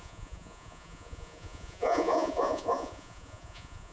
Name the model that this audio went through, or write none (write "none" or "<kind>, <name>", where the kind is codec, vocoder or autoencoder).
vocoder, Vocos